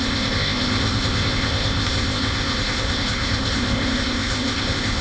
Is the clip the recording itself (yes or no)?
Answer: no